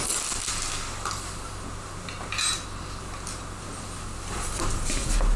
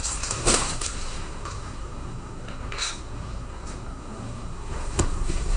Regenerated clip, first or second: second